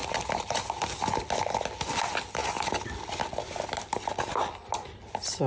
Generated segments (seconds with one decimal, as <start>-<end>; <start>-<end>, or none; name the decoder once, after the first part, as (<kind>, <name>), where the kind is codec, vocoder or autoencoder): none